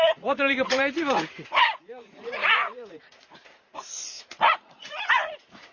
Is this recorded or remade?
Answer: remade